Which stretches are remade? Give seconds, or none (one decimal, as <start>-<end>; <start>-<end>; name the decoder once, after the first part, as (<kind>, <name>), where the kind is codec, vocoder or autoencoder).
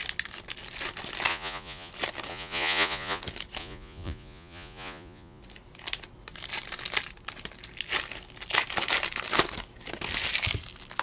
1.3-1.9 (vocoder, Vocos); 2.3-3.2; 3.6-5.4